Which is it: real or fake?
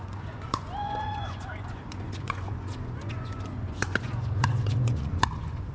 fake